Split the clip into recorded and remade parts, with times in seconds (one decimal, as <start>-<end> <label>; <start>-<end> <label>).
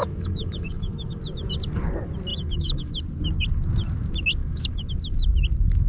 0.0-1.2 remade; 1.2-2.3 recorded; 2.3-3.0 remade; 3.0-4.4 recorded; 4.4-4.9 remade; 4.9-5.9 recorded